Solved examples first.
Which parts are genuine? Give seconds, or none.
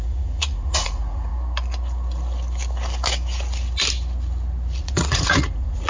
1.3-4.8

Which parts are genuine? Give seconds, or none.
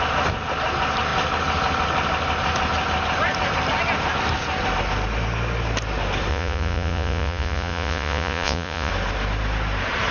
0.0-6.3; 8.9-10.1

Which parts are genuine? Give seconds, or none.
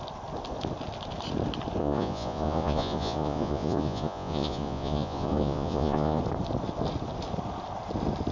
0.0-1.8; 6.2-8.3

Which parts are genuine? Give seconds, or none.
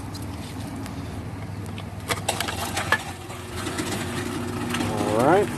0.0-2.6; 4.2-5.6